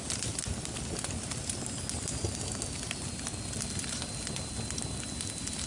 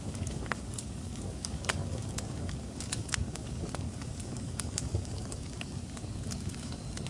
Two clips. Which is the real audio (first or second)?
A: first